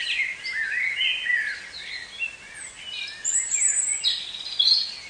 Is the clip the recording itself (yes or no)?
yes